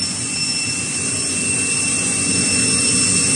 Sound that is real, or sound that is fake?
fake